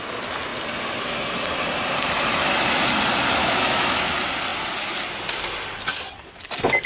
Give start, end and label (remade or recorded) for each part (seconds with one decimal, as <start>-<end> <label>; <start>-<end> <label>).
0.0-3.4 recorded; 3.4-4.1 remade; 4.1-6.9 recorded